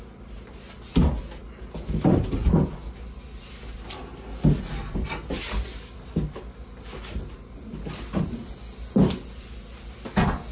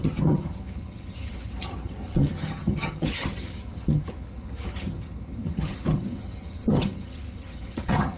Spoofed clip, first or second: second